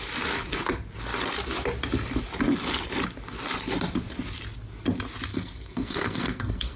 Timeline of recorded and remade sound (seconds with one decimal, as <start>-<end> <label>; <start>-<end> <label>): 0.0-5.3 recorded; 5.3-6.8 remade